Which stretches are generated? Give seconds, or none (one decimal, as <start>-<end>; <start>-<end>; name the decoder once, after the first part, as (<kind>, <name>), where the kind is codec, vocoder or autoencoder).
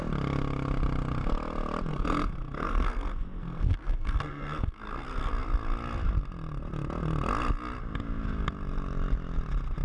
1.9-5.3 (codec, SNAC)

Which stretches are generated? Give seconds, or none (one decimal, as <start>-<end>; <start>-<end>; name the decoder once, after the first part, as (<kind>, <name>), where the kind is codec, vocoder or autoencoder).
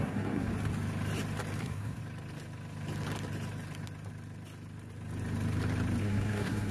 0.0-0.5 (codec, SNAC); 1.6-2.0; 6.0-6.7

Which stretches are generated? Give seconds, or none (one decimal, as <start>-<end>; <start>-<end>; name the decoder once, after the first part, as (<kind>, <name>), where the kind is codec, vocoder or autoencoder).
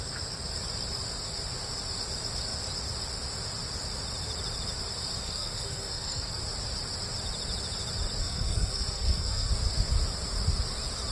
5.2-6.4 (codec, SNAC); 8.2-9.5